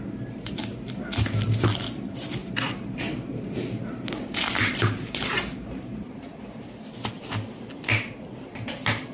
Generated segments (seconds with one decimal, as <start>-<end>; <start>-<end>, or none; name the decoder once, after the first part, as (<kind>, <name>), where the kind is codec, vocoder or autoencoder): 2.4-6.8 (vocoder, BigVGAN v2)